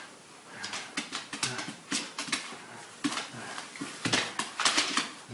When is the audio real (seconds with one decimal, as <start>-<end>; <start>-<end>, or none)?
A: 0.0-2.2; 2.7-5.3